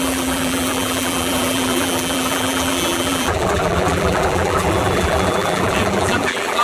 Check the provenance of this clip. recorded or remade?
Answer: remade